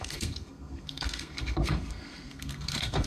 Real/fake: fake